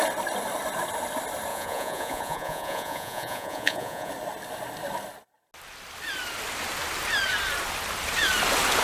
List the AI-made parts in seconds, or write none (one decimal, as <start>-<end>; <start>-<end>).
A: 1.5-4.1